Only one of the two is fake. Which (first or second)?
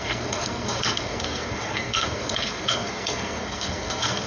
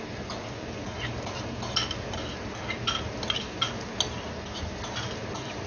first